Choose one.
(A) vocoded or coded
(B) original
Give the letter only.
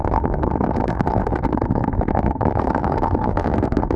A